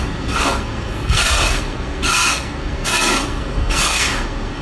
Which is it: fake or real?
fake